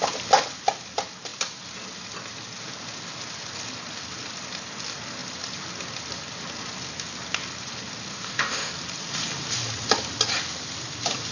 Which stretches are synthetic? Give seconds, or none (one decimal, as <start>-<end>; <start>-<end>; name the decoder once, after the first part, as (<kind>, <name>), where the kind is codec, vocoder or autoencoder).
8.1-8.7 (autoencoder, DAC-VAE)

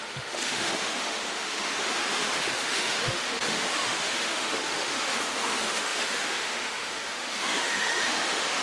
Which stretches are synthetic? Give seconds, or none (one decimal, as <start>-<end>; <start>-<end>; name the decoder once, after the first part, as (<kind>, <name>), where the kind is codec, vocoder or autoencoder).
0.0-8.6 (autoencoder, DAC-VAE)

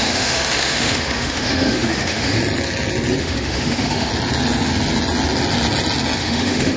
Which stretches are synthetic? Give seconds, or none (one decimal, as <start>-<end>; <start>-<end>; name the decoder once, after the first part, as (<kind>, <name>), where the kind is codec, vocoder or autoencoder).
0.0-2.4 (autoencoder, DAC-VAE); 3.2-4.1; 6.2-6.8